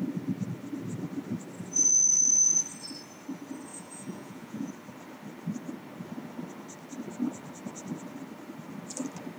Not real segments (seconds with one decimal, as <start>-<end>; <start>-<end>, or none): 3.7-4.7